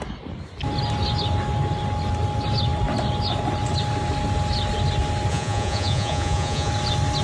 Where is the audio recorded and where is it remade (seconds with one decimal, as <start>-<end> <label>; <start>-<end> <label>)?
0.0-5.3 recorded; 5.3-6.7 remade; 6.7-7.2 recorded